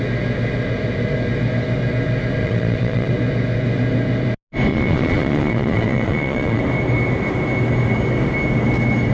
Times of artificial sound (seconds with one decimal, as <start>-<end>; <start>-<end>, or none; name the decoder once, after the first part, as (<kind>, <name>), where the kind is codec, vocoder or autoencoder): 2.4-3.1 (vocoder, Vocos); 4.7-6.6